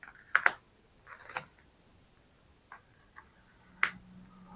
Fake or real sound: real